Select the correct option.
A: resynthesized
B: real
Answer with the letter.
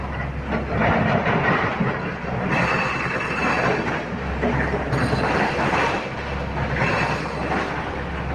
B